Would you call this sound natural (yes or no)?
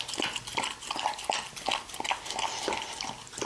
yes